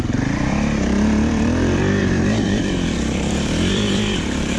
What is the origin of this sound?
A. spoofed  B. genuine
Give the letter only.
A